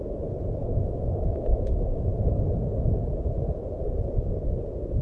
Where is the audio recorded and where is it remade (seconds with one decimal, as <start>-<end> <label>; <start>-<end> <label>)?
0.0-0.6 recorded; 0.6-2.4 remade; 2.4-5.0 recorded